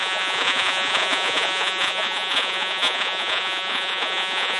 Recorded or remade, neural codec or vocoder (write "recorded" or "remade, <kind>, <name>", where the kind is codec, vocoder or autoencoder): remade, vocoder, Vocos